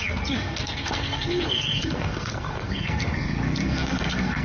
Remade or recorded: remade